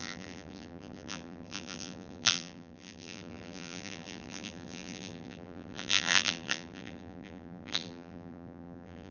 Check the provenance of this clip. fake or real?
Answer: fake